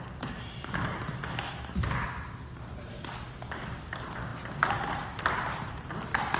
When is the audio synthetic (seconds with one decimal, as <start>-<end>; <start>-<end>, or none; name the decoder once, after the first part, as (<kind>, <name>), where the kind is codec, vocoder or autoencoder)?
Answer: none